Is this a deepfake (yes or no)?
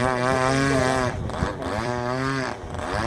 yes